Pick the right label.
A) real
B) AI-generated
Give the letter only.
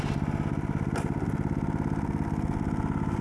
A